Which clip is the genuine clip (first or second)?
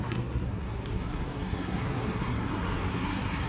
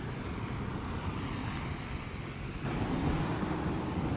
second